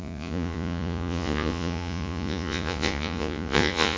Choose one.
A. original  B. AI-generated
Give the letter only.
B